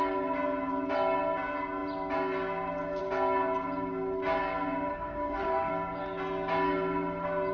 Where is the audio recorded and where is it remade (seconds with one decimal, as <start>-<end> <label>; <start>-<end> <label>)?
0.0-4.9 recorded; 4.9-5.7 remade; 5.7-7.5 recorded